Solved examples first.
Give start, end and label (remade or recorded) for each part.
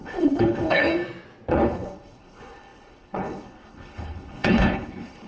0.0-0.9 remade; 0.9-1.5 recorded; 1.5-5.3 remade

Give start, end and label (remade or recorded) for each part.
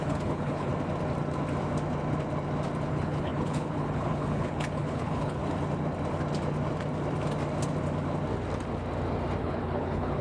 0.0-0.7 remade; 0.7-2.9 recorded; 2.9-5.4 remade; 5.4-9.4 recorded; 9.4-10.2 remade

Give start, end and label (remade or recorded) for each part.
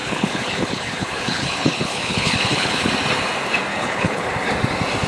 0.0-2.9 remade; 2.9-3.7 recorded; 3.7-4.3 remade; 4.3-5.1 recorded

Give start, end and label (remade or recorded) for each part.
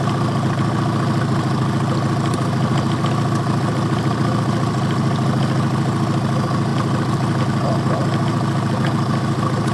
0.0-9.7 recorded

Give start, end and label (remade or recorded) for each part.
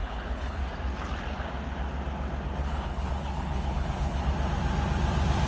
0.0-0.6 remade; 0.6-2.6 recorded; 2.6-4.3 remade; 4.3-5.5 recorded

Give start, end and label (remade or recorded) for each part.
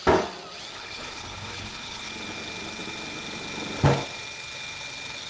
0.0-0.7 recorded; 0.7-2.1 remade; 2.1-5.3 recorded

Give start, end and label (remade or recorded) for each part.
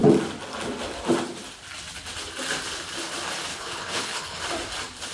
0.0-3.5 recorded; 3.5-4.4 remade; 4.4-5.1 recorded